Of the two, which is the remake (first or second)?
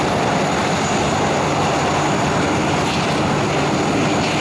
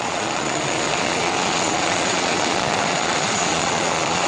second